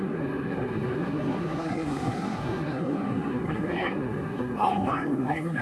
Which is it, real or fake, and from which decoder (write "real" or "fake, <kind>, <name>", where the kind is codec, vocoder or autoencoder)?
fake, codec, SNAC